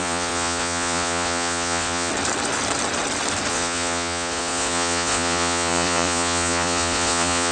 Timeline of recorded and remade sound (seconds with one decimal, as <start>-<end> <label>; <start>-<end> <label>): 0.0-2.1 remade; 2.1-3.5 recorded; 3.5-7.5 remade